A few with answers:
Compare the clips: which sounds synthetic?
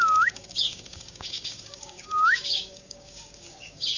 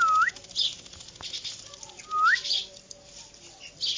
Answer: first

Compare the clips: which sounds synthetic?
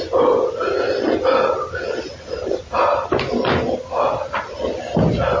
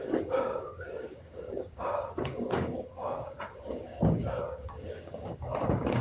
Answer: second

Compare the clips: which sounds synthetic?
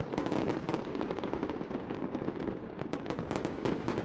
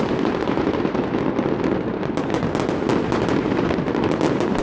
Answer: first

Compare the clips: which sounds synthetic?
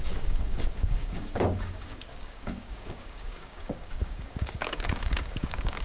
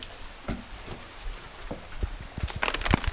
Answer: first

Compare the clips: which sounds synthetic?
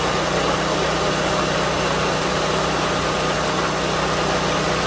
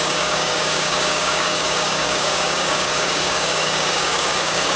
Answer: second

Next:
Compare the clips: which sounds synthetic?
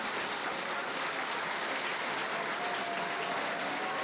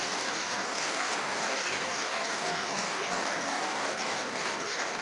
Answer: second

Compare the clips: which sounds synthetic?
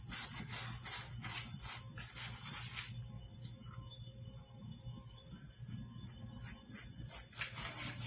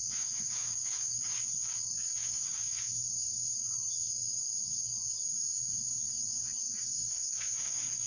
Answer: second